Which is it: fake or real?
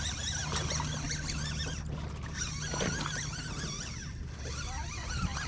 real